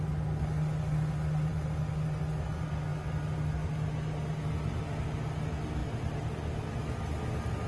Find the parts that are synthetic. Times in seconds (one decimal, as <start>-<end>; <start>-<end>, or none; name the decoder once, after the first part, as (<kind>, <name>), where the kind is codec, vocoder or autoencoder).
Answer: 5.8-6.8 (vocoder, BigVGAN v2)